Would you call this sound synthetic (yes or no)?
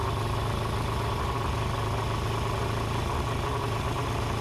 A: no